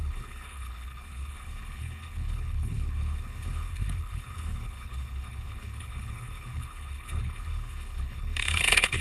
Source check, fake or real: fake